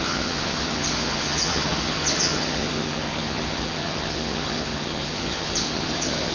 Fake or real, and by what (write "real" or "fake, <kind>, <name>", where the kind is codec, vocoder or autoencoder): fake, vocoder, HiFi-GAN